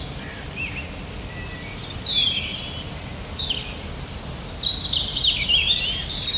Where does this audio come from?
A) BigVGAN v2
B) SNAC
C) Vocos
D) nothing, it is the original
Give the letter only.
D